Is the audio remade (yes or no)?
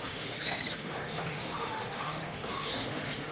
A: yes